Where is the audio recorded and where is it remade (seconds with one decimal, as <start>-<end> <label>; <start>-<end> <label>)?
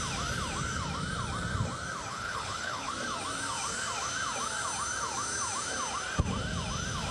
0.0-2.1 recorded; 2.1-2.9 remade; 2.9-7.1 recorded